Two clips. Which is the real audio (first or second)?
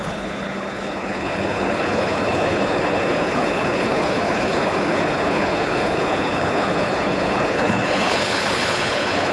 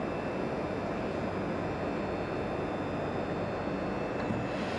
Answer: second